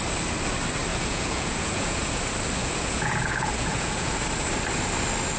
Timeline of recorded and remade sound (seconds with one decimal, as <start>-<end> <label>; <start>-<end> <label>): 0.0-0.9 recorded; 0.9-2.2 remade; 2.2-2.6 recorded; 2.6-4.2 remade; 4.2-5.4 recorded